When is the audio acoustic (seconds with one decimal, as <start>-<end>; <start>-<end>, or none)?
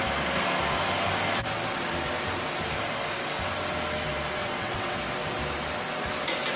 0.0-4.4; 5.0-6.6